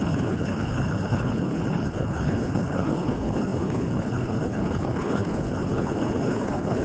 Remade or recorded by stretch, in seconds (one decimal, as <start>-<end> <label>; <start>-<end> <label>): 0.0-6.8 remade